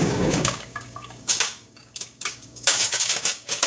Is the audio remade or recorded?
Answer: remade